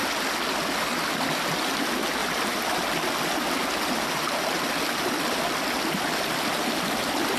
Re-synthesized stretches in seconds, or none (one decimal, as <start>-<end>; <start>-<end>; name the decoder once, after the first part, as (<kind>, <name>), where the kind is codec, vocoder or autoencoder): none